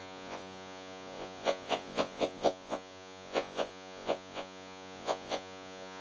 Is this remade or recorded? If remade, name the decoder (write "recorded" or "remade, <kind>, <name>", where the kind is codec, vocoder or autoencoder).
remade, vocoder, Vocos